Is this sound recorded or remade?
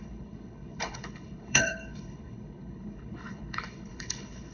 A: remade